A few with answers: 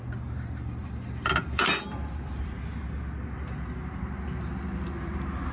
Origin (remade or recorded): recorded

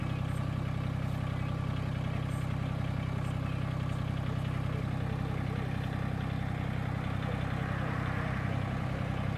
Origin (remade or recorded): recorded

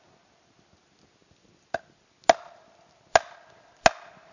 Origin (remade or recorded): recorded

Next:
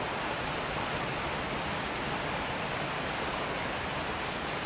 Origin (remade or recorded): recorded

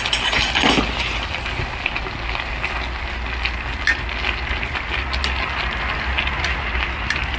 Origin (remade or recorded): recorded